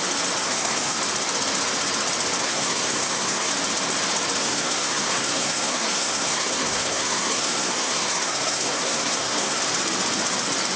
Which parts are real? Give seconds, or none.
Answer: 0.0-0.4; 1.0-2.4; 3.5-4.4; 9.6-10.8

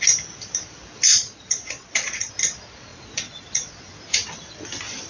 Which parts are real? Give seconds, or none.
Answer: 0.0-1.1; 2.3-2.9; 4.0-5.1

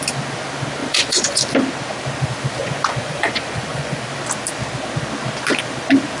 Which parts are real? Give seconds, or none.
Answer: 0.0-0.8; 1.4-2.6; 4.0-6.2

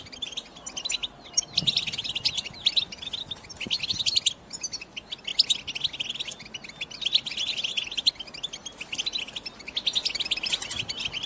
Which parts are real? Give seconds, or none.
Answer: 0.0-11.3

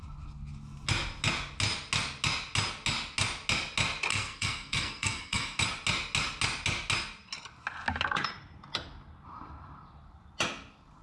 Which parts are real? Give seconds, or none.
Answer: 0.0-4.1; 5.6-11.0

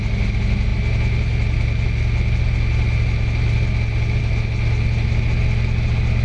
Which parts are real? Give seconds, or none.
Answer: 0.0-6.2

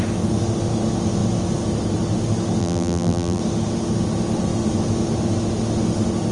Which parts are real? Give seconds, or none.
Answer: 0.0-2.6; 3.4-6.3